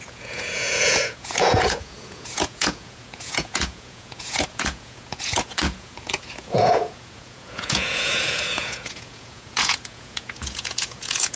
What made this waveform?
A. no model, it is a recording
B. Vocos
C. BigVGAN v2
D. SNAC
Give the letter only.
B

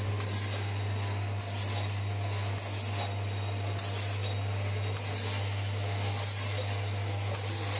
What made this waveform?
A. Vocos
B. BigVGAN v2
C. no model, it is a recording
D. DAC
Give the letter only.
C